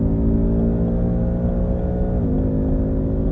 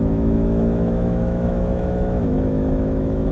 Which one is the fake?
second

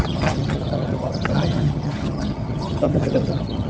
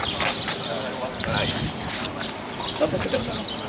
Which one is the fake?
first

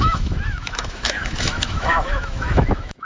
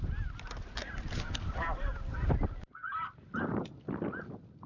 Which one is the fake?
first